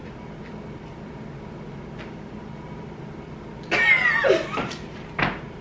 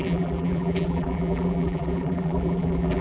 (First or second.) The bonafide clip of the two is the first